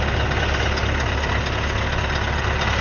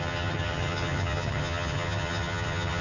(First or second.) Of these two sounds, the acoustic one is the first